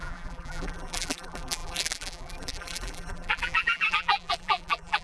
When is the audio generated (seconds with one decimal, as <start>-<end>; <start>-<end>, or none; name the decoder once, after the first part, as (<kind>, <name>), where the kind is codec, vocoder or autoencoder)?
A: 0.0-5.0 (vocoder, BigVGAN v2)